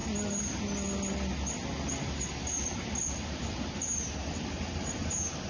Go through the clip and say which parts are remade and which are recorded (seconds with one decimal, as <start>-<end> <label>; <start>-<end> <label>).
0.0-5.5 recorded